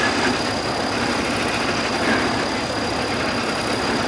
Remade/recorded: recorded